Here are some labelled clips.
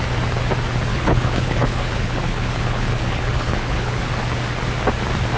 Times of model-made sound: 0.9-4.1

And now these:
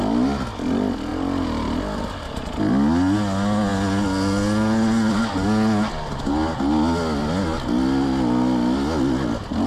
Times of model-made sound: none

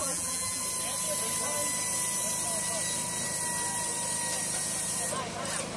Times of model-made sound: 0.0-0.6

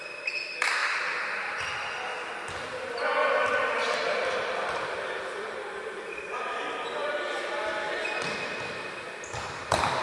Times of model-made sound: none